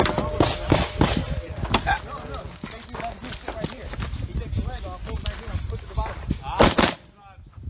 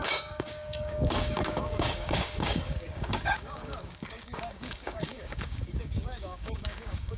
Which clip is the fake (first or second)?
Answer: second